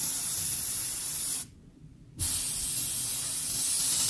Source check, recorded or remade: recorded